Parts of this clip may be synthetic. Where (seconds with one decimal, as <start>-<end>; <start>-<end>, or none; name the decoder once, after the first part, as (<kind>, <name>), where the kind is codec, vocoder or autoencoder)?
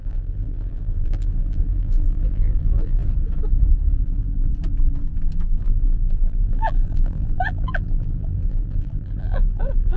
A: 0.0-3.0 (vocoder, BigVGAN v2); 4.0-4.5; 5.6-10.0